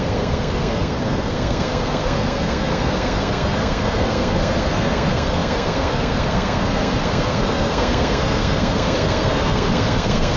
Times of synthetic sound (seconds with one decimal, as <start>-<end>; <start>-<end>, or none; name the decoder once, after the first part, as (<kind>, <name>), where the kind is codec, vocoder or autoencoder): 0.0-10.4 (codec, SNAC)